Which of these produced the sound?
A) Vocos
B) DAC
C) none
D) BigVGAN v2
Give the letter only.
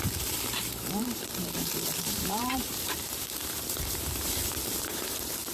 D